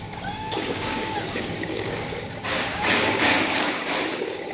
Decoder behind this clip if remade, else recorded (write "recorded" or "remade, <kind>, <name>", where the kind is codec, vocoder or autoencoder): remade, codec, DAC